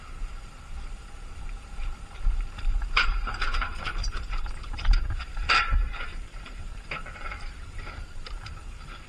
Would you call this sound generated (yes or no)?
yes